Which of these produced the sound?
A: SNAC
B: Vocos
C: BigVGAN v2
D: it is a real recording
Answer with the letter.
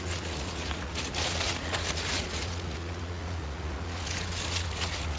B